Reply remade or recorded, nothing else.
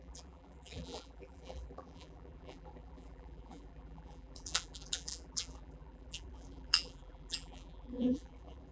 remade